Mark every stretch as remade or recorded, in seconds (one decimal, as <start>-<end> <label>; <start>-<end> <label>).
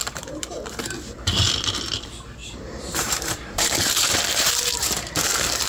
0.0-0.8 remade; 0.8-2.4 recorded; 2.4-4.5 remade; 4.5-5.7 recorded